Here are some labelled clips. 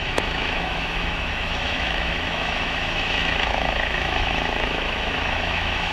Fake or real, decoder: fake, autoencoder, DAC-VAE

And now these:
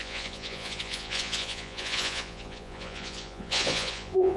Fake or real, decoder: fake, vocoder, Vocos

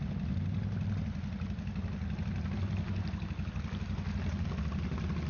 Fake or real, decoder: real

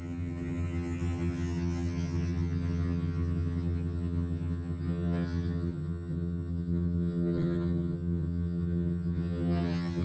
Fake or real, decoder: fake, vocoder, HiFi-GAN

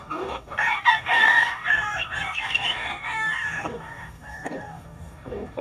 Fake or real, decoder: fake, codec, DAC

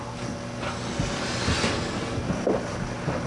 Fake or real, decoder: real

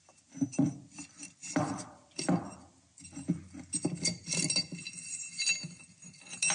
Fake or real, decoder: real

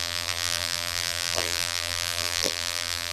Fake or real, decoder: fake, vocoder, BigVGAN v2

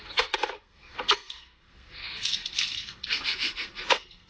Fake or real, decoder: fake, codec, SNAC